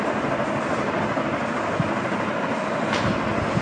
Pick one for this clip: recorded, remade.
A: recorded